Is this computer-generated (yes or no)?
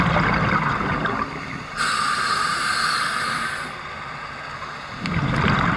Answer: no